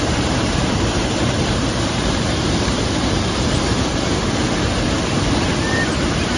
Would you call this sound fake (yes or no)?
yes